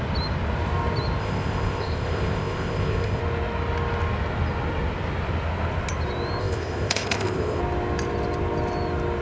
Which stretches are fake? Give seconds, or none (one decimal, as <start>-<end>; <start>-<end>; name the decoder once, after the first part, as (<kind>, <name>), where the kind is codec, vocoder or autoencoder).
1.2-3.2 (codec, ZipCodec); 6.4-7.6